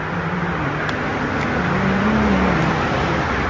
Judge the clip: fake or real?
real